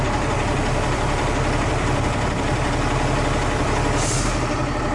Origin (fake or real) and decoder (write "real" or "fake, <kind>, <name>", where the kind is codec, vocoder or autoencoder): fake, vocoder, BigVGAN v2